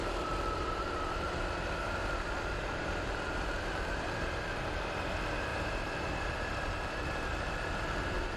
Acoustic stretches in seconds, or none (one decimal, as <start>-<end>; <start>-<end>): 1.4-2.0; 4.5-5.5